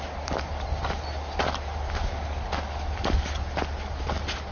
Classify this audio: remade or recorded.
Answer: recorded